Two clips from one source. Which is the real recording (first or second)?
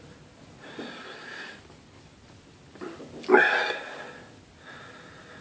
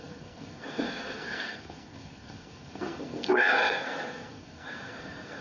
first